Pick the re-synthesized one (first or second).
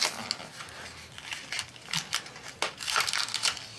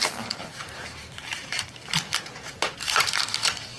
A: second